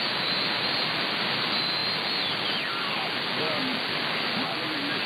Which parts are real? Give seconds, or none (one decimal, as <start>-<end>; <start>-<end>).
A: 0.0-5.1